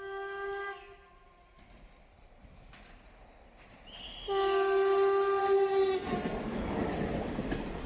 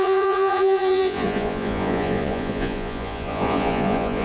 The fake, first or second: second